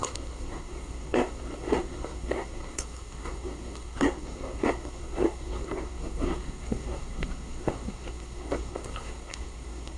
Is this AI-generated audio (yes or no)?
yes